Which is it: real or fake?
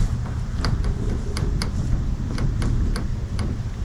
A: fake